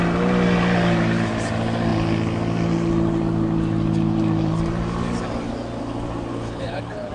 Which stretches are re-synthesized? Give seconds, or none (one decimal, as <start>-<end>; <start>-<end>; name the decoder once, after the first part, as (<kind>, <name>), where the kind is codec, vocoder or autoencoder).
6.3-7.1 (codec, HILCodec)